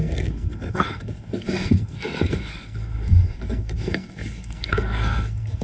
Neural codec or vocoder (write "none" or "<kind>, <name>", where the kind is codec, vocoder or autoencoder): codec, SNAC